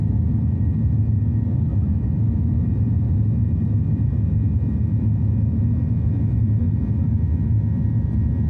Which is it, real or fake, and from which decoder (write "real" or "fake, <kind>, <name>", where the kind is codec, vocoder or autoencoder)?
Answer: real